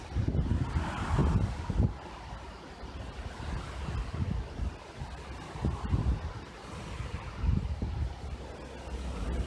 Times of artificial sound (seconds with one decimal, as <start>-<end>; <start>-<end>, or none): none